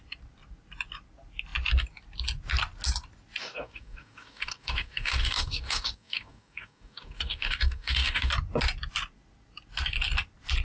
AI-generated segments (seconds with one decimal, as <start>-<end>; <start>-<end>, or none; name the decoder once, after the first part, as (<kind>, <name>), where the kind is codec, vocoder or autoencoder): 3.4-8.3 (codec, DAC)